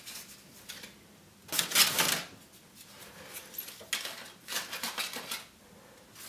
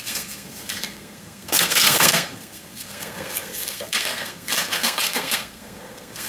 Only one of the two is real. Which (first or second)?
first